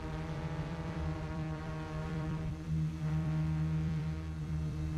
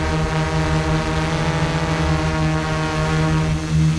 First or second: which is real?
second